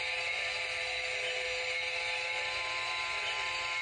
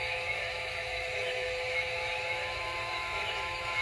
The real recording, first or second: first